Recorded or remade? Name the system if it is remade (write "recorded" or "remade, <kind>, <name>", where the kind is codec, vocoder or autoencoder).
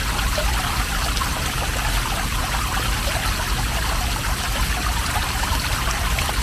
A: recorded